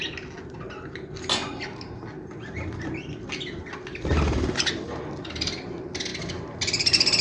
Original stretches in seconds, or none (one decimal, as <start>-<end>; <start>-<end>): 0.0-7.2

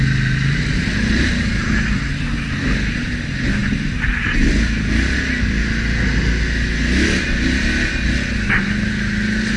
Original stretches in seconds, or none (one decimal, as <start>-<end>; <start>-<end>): 0.0-0.7; 1.7-9.6

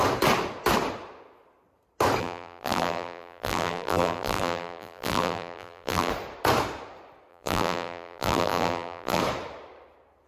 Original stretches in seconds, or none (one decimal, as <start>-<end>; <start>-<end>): 0.0-2.2; 6.1-7.3; 9.2-10.3

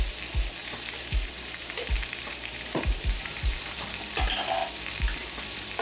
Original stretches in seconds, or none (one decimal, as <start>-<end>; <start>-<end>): 0.0-0.6; 4.1-5.8

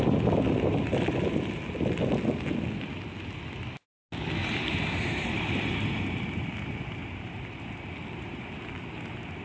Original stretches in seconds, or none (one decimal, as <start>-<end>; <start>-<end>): 0.0-4.4; 5.7-7.0; 7.9-9.4

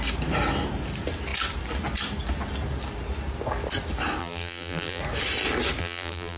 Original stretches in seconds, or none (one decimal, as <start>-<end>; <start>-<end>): 0.0-4.2; 5.0-5.8

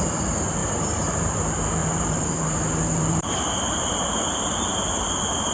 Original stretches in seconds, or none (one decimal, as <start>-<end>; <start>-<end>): 0.0-0.6; 1.4-1.8; 4.1-5.5

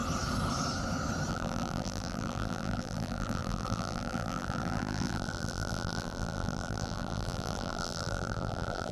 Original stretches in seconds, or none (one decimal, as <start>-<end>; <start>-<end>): 0.0-1.3